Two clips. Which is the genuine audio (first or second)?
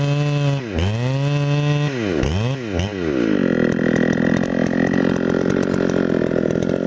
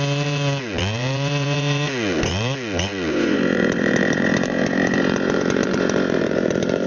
first